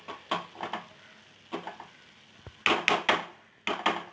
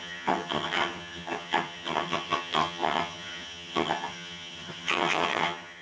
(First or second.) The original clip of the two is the first